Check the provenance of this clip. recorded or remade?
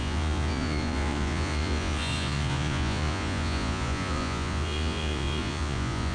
remade